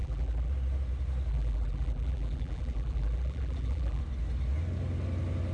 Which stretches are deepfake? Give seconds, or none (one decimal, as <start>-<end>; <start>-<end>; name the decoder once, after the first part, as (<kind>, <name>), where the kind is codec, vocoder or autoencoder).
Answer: 0.0-0.5 (vocoder, BigVGAN v2); 1.3-4.0